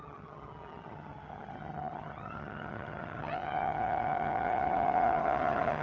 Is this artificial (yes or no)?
yes